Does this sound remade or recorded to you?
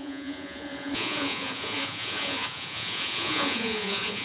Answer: remade